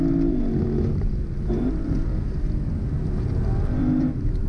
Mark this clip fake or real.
fake